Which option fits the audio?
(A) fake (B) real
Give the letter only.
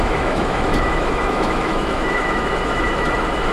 A